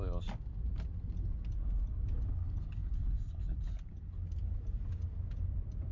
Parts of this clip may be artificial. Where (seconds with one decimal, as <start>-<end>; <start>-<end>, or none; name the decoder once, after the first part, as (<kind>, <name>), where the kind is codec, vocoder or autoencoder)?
none